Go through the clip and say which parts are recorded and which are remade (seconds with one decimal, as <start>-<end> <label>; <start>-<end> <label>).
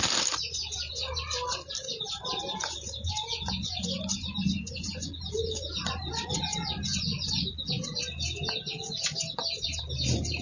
0.0-6.9 recorded; 6.9-8.0 remade; 8.0-10.4 recorded